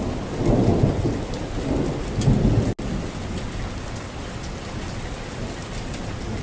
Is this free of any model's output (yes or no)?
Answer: yes